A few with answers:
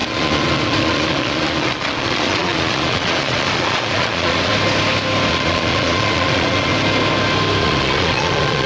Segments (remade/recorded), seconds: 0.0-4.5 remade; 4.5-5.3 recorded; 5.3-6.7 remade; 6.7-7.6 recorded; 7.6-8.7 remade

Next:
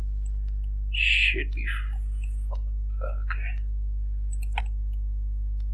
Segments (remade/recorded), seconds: 0.0-5.7 recorded

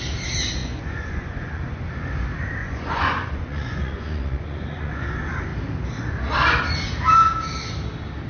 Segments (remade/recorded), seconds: 0.0-0.6 recorded; 0.6-1.8 remade; 1.8-2.6 recorded; 2.6-5.1 remade; 5.1-8.3 recorded